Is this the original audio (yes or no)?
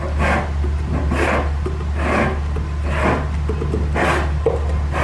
yes